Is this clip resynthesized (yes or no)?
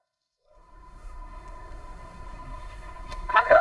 yes